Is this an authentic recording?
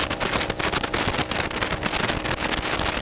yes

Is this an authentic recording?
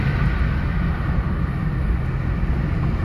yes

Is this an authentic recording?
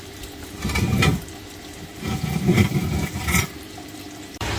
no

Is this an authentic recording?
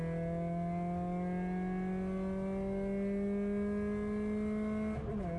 yes